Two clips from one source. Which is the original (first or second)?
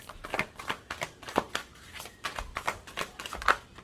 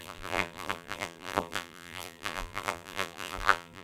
first